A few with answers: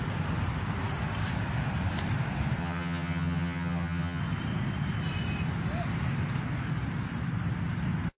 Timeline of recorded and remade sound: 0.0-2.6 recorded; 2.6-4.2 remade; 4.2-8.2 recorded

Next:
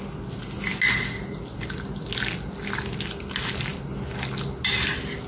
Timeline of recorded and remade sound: 0.0-5.3 recorded

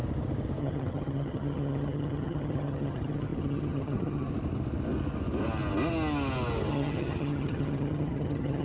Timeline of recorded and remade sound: 0.0-0.6 recorded; 0.6-4.3 remade; 4.3-6.7 recorded; 6.7-8.6 remade

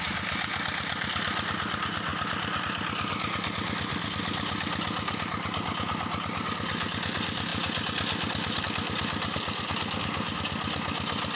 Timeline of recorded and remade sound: 0.0-11.4 recorded

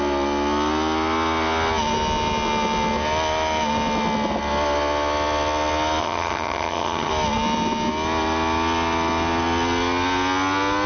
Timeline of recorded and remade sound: 0.0-6.0 recorded; 6.0-7.1 remade; 7.1-10.9 recorded

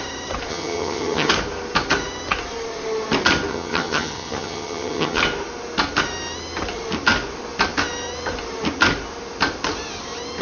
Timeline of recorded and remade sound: 0.0-0.5 recorded; 0.5-1.3 remade; 1.3-3.5 recorded; 3.5-5.2 remade; 5.2-10.4 recorded